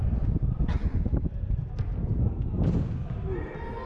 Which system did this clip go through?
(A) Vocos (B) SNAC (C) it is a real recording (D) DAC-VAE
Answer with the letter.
C